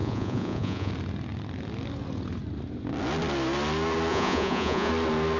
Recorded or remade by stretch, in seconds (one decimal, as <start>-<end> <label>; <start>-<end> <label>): 0.0-0.9 remade; 0.9-4.1 recorded; 4.1-4.9 remade; 4.9-5.4 recorded